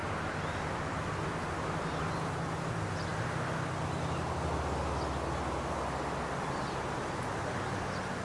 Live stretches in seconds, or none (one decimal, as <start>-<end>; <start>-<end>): 0.0-8.2